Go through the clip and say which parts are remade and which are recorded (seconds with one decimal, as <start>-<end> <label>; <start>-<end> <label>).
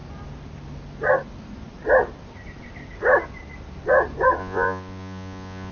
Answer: 0.0-4.4 recorded; 4.4-5.7 remade